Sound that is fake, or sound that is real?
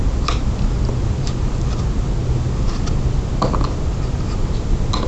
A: real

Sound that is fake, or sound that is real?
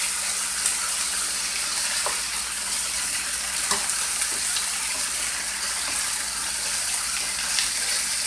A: real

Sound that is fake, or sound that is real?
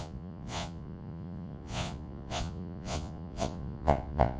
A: fake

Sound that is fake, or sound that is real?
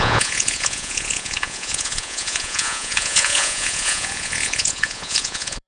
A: fake